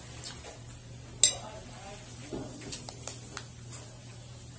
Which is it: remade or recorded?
recorded